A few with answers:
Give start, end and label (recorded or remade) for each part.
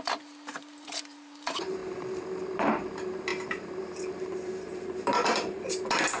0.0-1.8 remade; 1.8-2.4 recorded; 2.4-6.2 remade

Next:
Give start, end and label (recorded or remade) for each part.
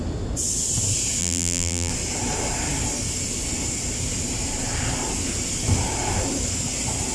0.0-1.2 recorded; 1.2-1.9 remade; 1.9-7.1 recorded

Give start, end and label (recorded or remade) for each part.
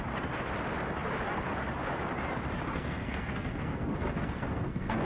0.0-2.7 recorded; 2.7-5.0 remade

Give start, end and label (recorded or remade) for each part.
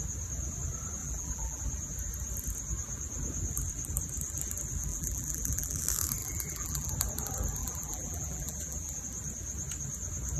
0.0-1.0 recorded; 1.0-1.6 remade; 1.6-4.9 recorded; 4.9-5.8 remade; 5.8-6.2 recorded; 6.2-6.9 remade; 6.9-7.6 recorded; 7.6-9.0 remade; 9.0-10.4 recorded